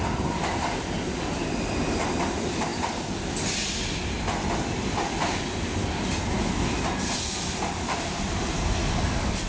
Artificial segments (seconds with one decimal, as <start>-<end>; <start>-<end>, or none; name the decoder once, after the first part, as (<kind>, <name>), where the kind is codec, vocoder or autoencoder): none